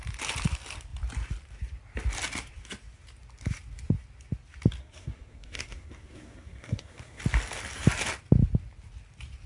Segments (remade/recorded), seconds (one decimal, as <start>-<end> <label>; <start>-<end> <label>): 0.0-4.8 recorded; 4.8-7.2 remade; 7.2-9.5 recorded